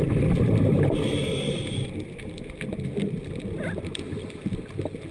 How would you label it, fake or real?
real